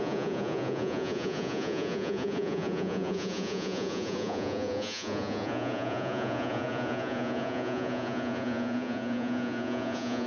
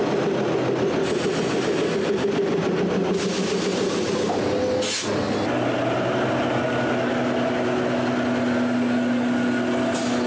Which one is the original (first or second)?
second